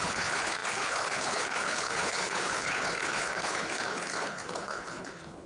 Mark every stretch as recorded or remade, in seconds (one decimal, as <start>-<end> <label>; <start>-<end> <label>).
0.0-5.5 remade